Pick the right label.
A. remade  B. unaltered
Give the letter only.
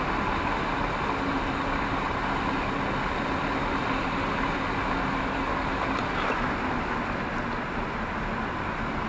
B